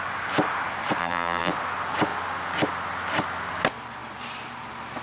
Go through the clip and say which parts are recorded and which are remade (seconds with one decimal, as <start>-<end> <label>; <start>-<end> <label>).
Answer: 0.0-1.0 recorded; 1.0-1.5 remade; 1.5-5.0 recorded